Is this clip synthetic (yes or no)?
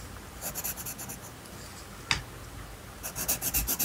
no